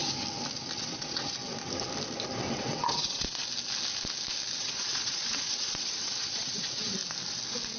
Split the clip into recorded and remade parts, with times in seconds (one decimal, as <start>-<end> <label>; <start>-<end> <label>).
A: 0.0-0.8 recorded; 0.8-1.4 remade; 1.4-2.4 recorded; 2.4-3.4 remade; 3.4-4.6 recorded; 4.6-7.0 remade; 7.0-7.8 recorded